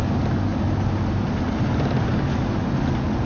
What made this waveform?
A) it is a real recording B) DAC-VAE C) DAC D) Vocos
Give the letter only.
A